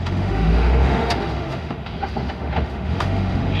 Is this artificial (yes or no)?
yes